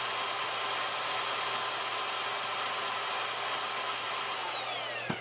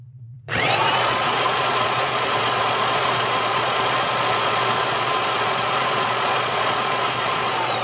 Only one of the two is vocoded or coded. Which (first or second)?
second